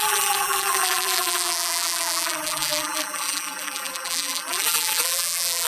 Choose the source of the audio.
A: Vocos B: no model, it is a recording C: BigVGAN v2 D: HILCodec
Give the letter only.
C